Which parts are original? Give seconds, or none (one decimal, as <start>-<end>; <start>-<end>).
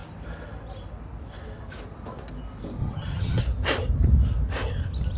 0.0-2.8; 3.4-5.2